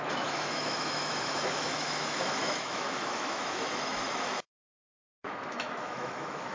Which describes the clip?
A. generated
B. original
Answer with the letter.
A